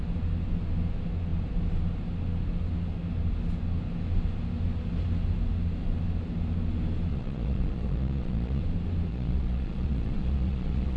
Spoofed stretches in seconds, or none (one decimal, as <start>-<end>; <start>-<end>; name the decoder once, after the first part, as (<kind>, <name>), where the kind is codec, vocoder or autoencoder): 7.1-8.6 (vocoder, Vocos); 9.1-11.0